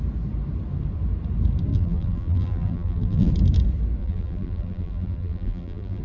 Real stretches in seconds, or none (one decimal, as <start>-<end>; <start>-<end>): 0.0-1.7; 3.3-4.0